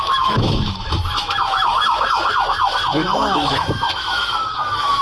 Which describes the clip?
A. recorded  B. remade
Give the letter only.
B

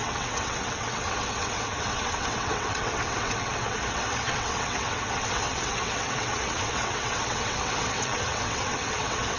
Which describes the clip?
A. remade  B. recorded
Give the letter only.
A